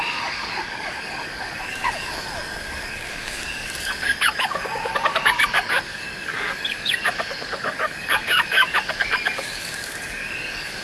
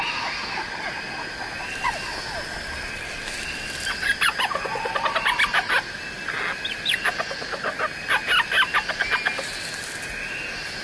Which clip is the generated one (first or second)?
first